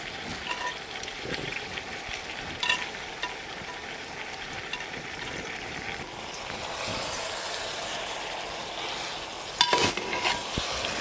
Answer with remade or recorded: recorded